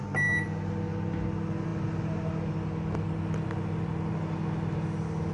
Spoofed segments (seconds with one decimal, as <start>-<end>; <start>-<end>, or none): none